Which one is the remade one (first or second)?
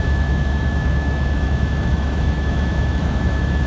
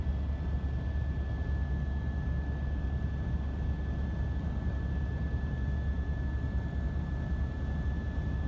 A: first